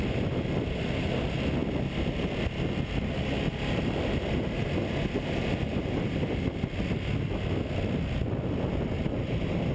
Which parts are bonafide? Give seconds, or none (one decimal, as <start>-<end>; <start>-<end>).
0.0-9.7